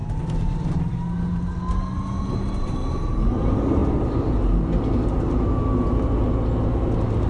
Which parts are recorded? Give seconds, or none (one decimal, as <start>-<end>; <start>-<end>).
0.0-7.3